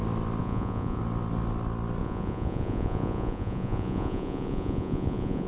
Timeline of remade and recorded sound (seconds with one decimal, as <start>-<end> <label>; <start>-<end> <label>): 0.0-0.4 recorded; 0.4-1.0 remade; 1.0-2.0 recorded; 2.0-5.5 remade